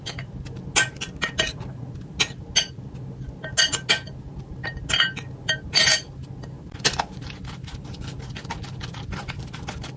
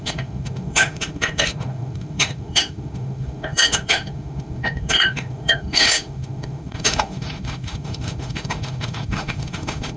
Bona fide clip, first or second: first